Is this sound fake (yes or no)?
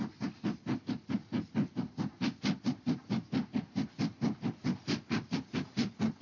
no